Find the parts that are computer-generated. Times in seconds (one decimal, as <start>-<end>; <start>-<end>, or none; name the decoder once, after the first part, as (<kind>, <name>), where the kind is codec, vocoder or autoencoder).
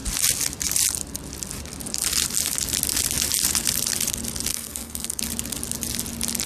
4.5-5.2 (codec, SNAC)